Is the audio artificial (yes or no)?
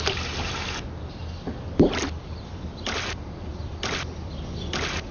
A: no